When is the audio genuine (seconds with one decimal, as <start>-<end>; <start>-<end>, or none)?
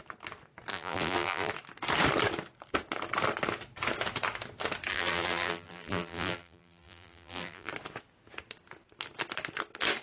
0.0-0.7; 1.5-4.9; 7.7-10.0